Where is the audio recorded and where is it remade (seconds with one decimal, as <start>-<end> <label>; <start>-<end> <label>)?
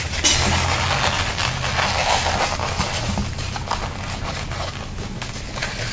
0.0-5.9 recorded